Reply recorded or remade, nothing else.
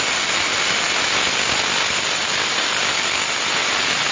recorded